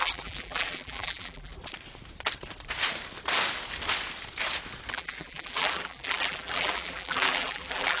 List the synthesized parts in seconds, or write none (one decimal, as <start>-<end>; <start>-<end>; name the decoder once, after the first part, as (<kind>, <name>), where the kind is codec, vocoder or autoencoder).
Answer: 0.0-1.5 (vocoder, BigVGAN v2); 4.9-8.0